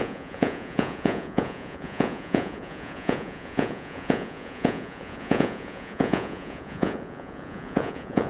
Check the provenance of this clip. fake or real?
fake